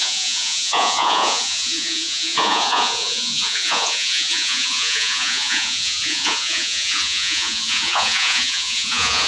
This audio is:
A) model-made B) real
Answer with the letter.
A